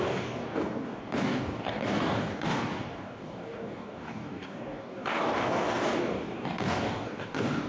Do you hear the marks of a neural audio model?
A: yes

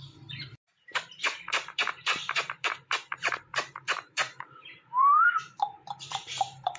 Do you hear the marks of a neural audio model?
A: yes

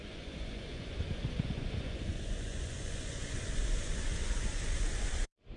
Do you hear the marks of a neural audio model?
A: yes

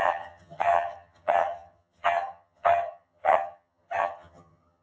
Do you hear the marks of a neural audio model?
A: yes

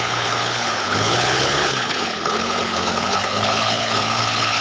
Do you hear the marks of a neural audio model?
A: yes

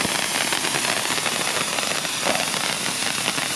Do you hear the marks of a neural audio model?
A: no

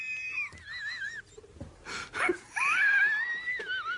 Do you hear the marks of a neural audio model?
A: no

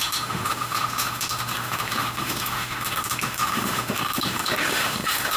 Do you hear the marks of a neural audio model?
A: yes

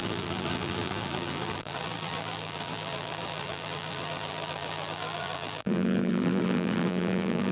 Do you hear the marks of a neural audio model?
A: yes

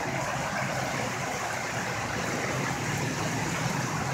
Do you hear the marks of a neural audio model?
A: no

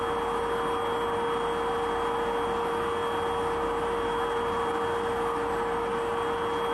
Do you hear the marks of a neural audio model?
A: no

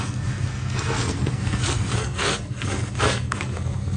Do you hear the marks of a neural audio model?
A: yes